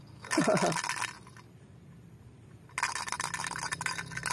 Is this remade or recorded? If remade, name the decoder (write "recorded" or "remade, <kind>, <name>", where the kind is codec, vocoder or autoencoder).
recorded